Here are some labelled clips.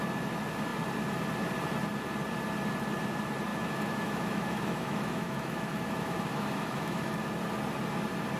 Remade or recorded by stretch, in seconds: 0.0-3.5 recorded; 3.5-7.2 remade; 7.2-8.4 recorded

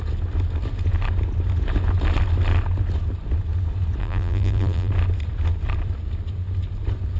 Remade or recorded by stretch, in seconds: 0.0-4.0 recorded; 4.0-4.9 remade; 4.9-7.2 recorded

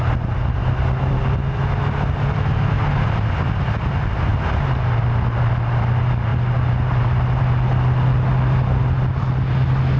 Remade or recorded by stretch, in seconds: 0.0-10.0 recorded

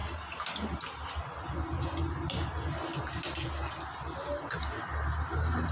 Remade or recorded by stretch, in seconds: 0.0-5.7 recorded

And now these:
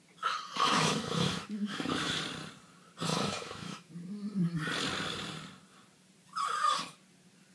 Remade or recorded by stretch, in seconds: 0.0-0.6 recorded; 0.6-2.2 remade; 2.2-3.1 recorded; 3.1-3.9 remade; 3.9-7.5 recorded

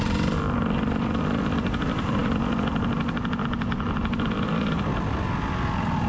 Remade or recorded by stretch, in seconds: 0.0-6.1 recorded

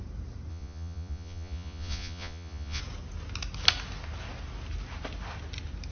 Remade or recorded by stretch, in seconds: 0.0-0.5 recorded; 0.5-2.8 remade; 2.8-5.9 recorded